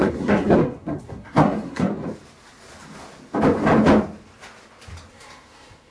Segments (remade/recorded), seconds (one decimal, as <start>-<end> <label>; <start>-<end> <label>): 0.0-1.9 remade; 1.9-5.1 recorded; 5.1-5.9 remade